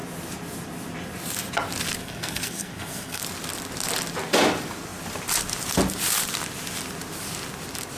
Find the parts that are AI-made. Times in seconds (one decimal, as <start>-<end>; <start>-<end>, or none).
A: 2.0-3.2